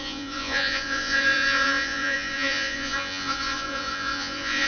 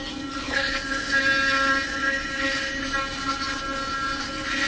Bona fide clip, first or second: second